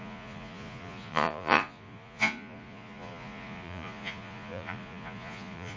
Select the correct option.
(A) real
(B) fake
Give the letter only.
B